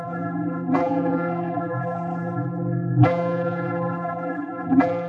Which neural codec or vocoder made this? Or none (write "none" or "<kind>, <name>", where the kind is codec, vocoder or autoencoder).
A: vocoder, BigVGAN v2